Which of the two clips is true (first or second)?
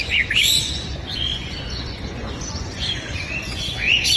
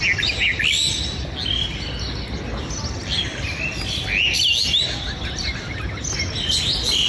second